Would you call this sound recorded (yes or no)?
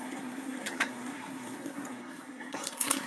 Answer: no